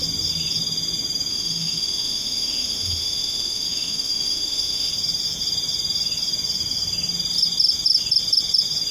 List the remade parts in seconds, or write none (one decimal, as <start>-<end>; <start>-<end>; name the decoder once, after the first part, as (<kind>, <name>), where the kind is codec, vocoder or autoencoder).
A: 1.3-4.9 (autoencoder, DAC-VAE)